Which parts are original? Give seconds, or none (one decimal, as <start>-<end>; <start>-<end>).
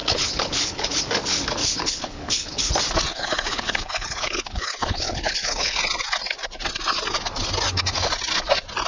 1.0-1.6; 2.7-3.1; 5.8-8.9